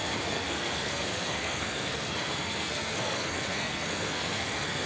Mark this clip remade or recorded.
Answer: remade